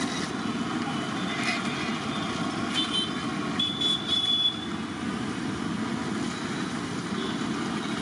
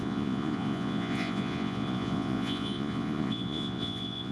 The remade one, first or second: second